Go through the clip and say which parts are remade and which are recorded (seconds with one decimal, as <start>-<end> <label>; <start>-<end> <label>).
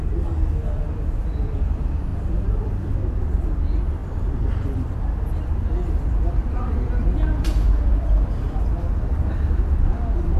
0.0-2.1 recorded; 2.1-2.9 remade; 2.9-4.0 recorded; 4.0-9.3 remade; 9.3-10.4 recorded